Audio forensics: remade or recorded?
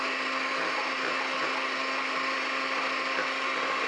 recorded